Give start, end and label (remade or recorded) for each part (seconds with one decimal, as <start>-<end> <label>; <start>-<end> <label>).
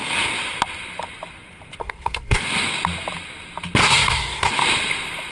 0.0-1.8 recorded; 1.8-2.4 remade; 2.4-3.8 recorded; 3.8-4.5 remade; 4.5-5.3 recorded